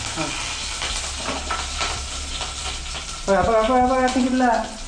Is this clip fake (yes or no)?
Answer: no